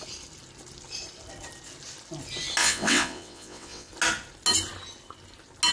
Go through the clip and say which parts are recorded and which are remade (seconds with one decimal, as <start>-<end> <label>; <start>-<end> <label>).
0.0-2.6 recorded; 2.6-3.9 remade; 3.9-5.7 recorded